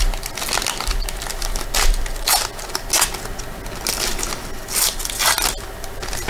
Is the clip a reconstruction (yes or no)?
no